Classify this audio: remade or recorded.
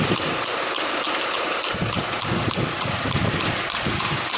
remade